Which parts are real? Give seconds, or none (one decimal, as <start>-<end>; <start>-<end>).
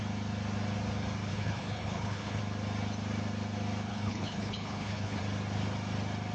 0.0-1.3; 2.4-3.9; 5.2-6.3